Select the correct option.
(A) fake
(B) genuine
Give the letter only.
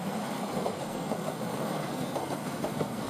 A